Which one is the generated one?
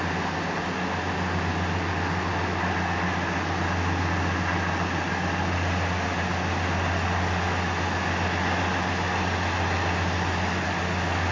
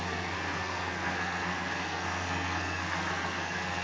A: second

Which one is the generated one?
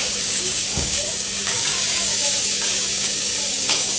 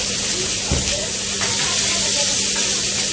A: first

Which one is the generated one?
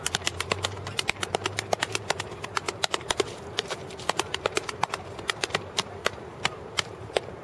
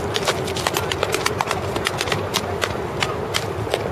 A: first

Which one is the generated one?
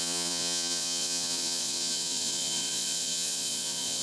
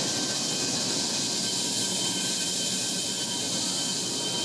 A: first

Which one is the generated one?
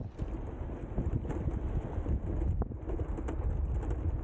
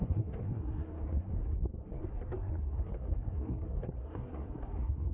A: second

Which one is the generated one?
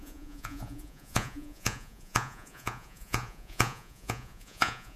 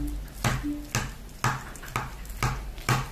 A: first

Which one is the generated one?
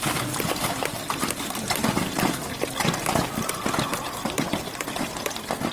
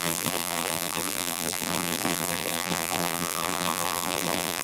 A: second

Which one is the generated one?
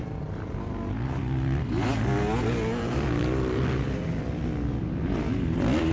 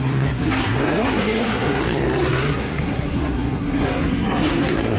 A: second